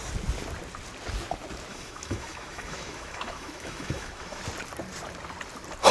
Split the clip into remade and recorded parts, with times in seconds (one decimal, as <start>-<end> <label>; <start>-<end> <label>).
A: 0.0-1.7 recorded; 1.7-4.4 remade; 4.4-5.9 recorded